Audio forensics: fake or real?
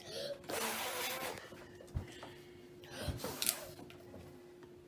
real